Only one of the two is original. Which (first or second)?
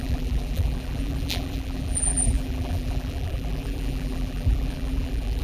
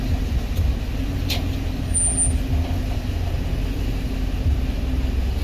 second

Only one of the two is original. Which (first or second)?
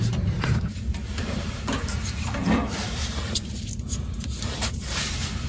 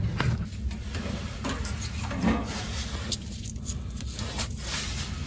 second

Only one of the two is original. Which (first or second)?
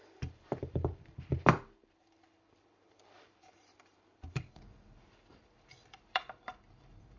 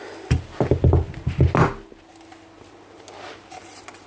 second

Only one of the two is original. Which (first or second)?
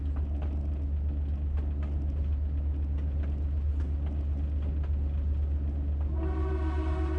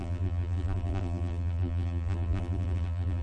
first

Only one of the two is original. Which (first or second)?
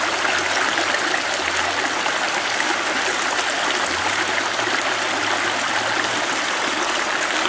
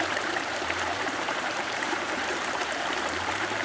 first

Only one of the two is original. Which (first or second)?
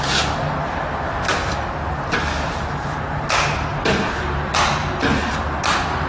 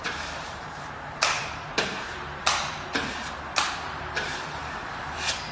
first